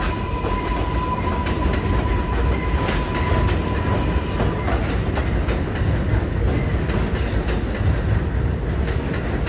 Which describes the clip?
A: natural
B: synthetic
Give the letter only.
A